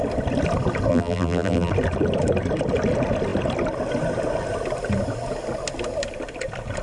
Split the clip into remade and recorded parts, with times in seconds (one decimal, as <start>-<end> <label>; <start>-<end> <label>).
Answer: 0.0-0.9 recorded; 0.9-1.7 remade; 1.7-6.8 recorded